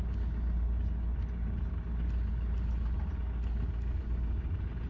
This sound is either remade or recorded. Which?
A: recorded